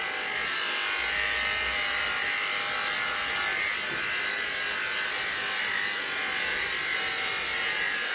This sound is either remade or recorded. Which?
recorded